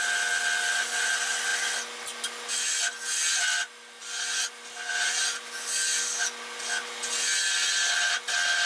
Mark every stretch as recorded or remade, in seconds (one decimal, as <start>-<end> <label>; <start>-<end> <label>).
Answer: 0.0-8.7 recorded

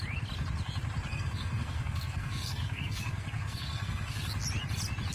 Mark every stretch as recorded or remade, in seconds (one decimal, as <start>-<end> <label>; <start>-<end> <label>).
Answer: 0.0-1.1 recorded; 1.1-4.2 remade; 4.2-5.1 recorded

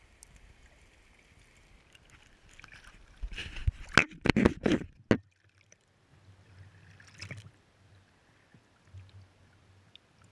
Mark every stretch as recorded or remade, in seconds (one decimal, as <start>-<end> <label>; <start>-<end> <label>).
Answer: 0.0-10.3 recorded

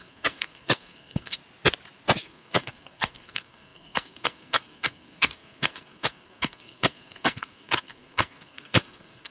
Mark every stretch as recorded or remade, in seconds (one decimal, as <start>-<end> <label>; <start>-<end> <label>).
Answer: 0.0-1.4 remade; 1.4-2.2 recorded; 2.2-9.3 remade

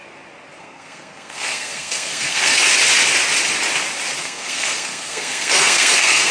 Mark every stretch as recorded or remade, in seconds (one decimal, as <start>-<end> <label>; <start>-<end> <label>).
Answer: 0.0-0.6 recorded; 0.6-2.6 remade; 2.6-4.2 recorded; 4.2-6.3 remade

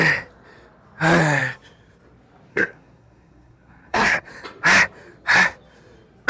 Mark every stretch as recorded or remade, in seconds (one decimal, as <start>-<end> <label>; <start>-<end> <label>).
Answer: 0.0-2.5 recorded; 2.5-4.3 remade; 4.3-6.3 recorded